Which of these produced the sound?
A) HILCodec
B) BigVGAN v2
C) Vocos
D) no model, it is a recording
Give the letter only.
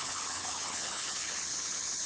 A